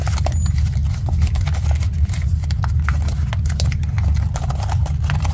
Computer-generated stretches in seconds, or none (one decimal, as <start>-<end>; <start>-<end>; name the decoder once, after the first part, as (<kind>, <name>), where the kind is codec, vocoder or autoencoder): none